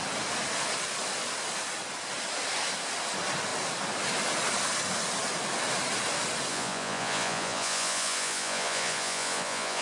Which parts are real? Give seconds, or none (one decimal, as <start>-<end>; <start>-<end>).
0.0-6.5

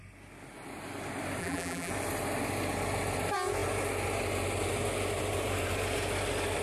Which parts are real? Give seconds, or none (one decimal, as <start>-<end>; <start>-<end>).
0.0-1.4; 1.9-6.6

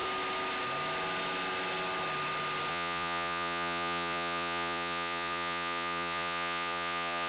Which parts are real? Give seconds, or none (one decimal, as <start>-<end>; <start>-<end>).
0.0-2.7